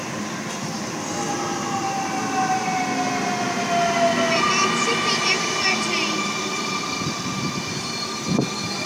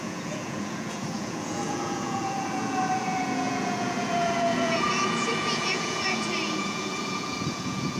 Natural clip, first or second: first